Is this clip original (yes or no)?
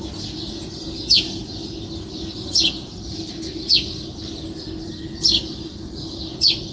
yes